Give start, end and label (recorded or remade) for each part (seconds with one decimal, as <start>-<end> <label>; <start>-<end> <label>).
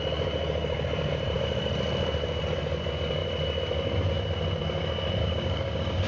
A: 0.0-5.2 recorded; 5.2-6.1 remade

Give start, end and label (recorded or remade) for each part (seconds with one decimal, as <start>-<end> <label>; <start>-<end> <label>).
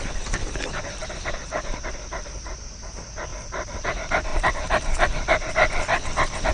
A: 0.0-3.3 recorded; 3.3-3.9 remade; 3.9-4.3 recorded; 4.3-5.5 remade; 5.5-6.5 recorded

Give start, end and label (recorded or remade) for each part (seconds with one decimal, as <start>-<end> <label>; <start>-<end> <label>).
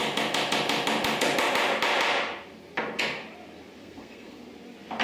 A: 0.0-3.8 recorded; 3.8-4.4 remade; 4.4-5.0 recorded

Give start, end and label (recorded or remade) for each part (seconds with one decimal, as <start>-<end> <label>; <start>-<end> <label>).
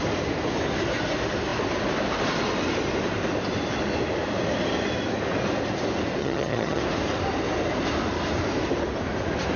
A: 0.0-6.2 recorded; 6.2-6.8 remade; 6.8-9.6 recorded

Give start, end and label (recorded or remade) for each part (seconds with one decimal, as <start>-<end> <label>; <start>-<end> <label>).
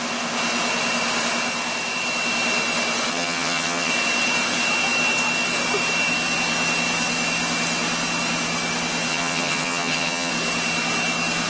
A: 0.0-3.1 recorded; 3.1-3.9 remade; 3.9-9.1 recorded; 9.1-10.3 remade; 10.3-11.5 recorded